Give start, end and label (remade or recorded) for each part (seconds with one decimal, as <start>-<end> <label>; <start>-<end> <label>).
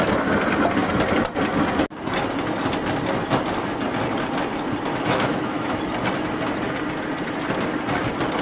0.0-4.9 recorded; 4.9-5.8 remade; 5.8-8.4 recorded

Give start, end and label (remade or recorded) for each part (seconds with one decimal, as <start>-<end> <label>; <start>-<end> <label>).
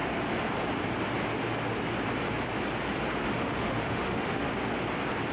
0.0-3.2 recorded; 3.2-4.5 remade; 4.5-5.3 recorded